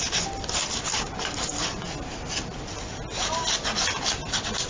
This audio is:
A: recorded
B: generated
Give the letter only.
A